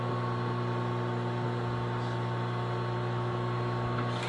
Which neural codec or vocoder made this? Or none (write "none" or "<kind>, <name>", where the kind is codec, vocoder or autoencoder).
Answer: none